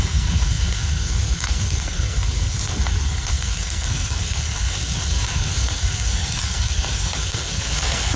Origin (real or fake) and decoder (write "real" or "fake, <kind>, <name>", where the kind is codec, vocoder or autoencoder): fake, codec, SNAC